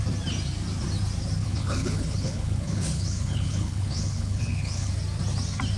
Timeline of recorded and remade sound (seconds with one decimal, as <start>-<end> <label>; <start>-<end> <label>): 0.0-1.4 recorded; 1.4-4.9 remade; 4.9-5.8 recorded